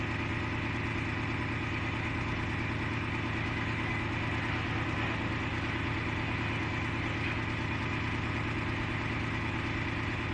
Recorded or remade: recorded